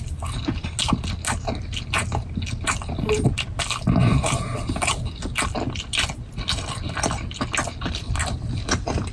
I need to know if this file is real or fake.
real